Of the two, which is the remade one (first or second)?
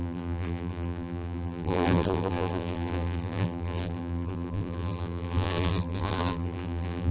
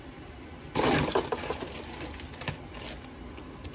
first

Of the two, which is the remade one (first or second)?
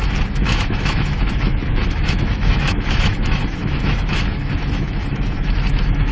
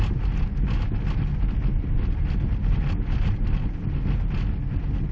first